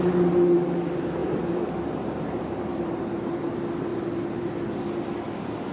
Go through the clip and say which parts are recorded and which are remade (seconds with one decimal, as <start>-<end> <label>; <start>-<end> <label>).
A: 0.0-1.2 recorded; 1.2-3.0 remade; 3.0-3.9 recorded; 3.9-4.8 remade; 4.8-5.7 recorded